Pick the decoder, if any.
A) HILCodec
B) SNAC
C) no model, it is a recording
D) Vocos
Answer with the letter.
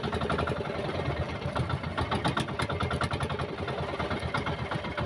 C